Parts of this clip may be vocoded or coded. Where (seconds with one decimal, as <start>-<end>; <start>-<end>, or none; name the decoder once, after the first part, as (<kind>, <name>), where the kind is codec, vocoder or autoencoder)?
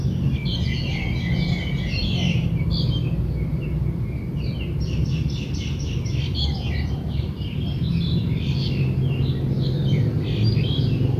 2.0-2.7 (vocoder, BigVGAN v2); 3.5-7.9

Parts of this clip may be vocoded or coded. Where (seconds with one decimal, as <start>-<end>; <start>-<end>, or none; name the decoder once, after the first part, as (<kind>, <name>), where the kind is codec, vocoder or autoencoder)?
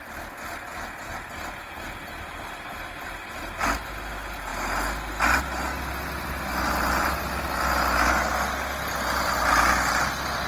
none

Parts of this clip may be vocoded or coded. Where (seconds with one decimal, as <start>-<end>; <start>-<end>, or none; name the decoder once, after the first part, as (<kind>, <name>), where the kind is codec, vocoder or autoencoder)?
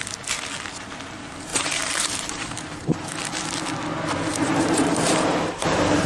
1.5-3.1 (vocoder, BigVGAN v2); 4.3-6.1